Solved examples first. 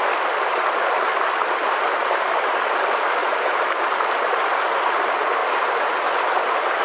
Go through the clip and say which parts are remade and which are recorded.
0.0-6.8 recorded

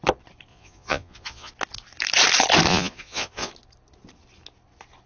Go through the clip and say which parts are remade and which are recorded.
0.0-0.5 recorded; 0.5-1.5 remade; 1.5-2.7 recorded; 2.7-3.5 remade; 3.5-5.1 recorded

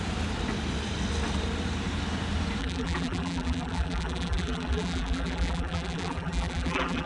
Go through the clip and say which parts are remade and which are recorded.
0.0-2.6 recorded; 2.6-7.1 remade

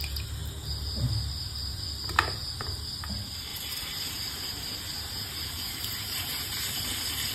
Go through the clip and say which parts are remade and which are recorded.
0.0-3.5 recorded; 3.5-7.3 remade

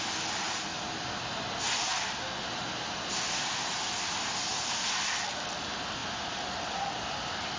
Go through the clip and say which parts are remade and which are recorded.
0.0-7.6 recorded

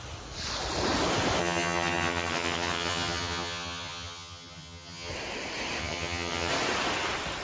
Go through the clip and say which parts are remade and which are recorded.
0.0-1.4 recorded; 1.4-5.1 remade; 5.1-5.8 recorded; 5.8-6.5 remade; 6.5-7.4 recorded